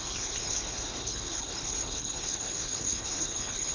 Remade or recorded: remade